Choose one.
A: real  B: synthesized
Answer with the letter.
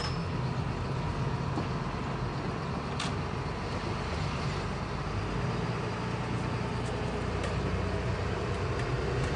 A